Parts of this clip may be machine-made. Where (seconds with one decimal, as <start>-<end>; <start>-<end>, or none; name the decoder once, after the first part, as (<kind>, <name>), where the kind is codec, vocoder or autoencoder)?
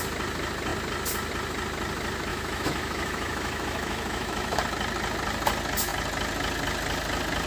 2.3-4.6 (autoencoder, DAC-VAE)